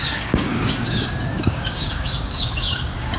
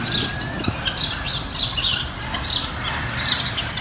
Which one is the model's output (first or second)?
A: first